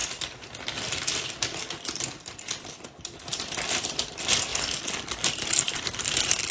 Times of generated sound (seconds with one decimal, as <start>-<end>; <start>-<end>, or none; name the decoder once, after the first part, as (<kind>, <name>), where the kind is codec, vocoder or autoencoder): 2.3-4.5 (vocoder, BigVGAN v2); 6.1-6.5